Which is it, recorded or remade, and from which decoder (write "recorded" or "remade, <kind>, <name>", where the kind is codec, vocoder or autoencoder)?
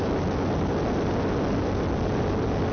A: recorded